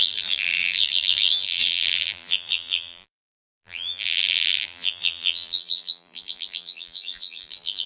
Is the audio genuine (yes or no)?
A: no